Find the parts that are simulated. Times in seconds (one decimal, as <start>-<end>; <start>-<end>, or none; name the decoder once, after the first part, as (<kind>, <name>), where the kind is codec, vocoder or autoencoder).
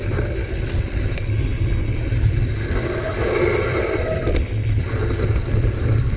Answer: 3.7-4.4 (vocoder, BigVGAN v2)